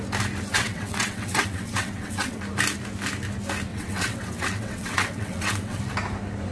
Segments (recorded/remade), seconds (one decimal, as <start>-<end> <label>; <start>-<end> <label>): 0.0-0.5 recorded; 0.5-2.4 remade; 2.4-3.7 recorded; 3.7-5.8 remade; 5.8-6.5 recorded